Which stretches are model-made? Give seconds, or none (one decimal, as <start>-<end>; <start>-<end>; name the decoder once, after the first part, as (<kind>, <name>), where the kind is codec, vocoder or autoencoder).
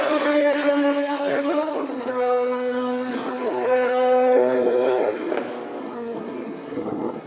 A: 0.0-5.3 (codec, SNAC); 5.8-7.3